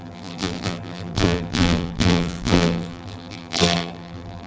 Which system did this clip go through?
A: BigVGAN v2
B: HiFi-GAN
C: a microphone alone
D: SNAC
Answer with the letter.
A